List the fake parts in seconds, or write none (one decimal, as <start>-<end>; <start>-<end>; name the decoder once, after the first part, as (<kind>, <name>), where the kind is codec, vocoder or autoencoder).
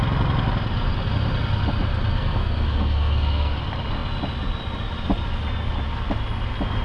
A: 2.1-3.6 (codec, SNAC)